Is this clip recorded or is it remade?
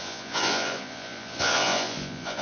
remade